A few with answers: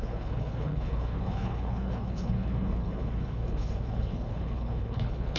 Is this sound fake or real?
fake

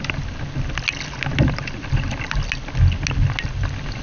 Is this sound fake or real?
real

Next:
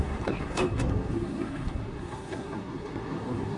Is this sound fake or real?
fake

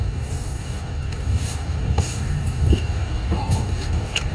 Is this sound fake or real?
fake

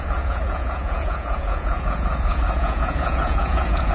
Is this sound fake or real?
fake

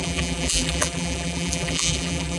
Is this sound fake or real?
fake